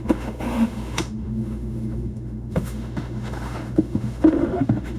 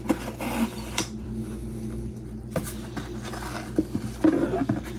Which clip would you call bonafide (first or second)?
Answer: second